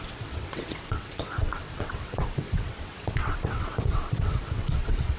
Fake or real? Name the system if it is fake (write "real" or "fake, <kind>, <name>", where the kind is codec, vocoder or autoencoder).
fake, vocoder, WaveNeXt